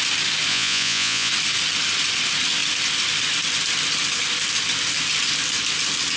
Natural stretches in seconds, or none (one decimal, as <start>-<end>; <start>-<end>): 0.0-0.5; 1.3-6.2